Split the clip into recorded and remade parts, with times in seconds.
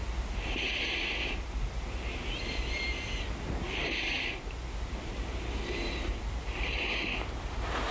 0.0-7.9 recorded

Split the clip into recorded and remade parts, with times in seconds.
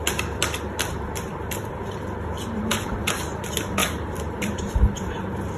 0.0-3.8 recorded; 3.8-4.8 remade; 4.8-5.6 recorded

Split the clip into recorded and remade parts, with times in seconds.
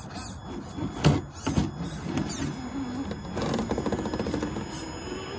0.0-5.4 recorded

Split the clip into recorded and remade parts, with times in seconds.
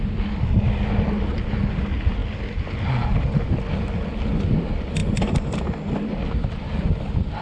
0.0-7.4 recorded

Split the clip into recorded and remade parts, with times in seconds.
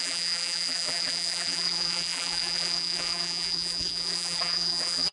0.0-5.1 remade